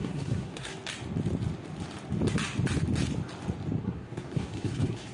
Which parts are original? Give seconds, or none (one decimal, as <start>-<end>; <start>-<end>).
0.7-3.8